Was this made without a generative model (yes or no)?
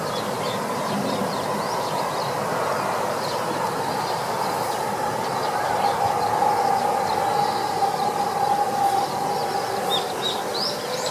yes